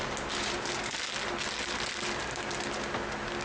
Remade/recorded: recorded